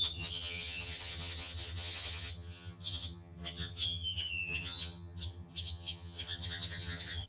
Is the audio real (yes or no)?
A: no